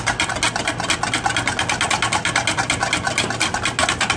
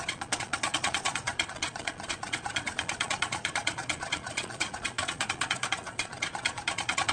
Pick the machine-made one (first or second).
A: second